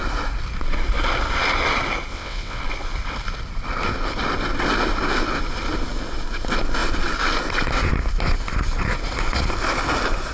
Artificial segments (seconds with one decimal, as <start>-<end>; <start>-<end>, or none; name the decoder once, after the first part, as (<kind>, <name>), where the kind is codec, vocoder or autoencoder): 2.1-2.6 (vocoder, WaveNeXt)